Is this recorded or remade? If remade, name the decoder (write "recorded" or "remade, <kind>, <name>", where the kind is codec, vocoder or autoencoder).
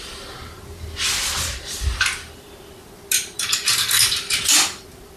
recorded